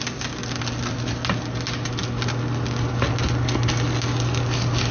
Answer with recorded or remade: recorded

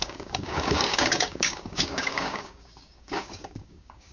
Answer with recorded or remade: remade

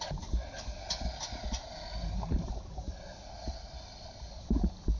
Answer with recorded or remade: recorded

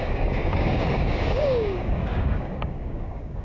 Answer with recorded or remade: remade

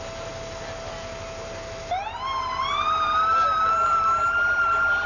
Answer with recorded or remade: recorded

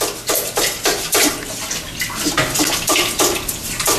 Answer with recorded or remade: recorded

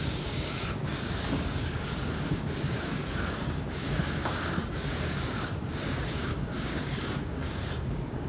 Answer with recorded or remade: remade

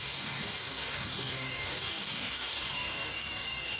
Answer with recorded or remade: remade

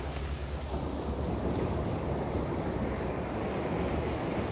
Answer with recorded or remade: remade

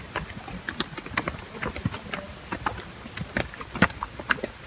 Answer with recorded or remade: recorded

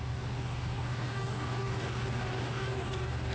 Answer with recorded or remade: remade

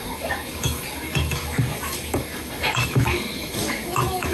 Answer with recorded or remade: remade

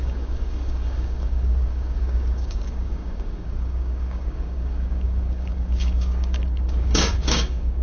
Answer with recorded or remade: remade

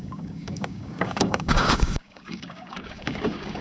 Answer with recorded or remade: remade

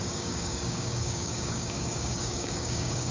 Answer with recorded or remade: remade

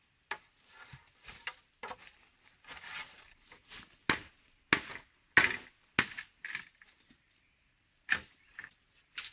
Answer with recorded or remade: recorded